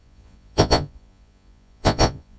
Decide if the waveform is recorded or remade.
remade